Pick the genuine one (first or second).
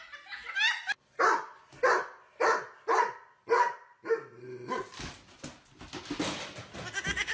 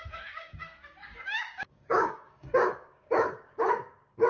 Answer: first